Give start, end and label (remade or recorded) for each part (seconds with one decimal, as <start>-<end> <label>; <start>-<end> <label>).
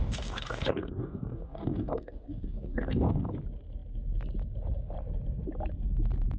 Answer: 0.0-3.4 remade; 3.4-6.4 recorded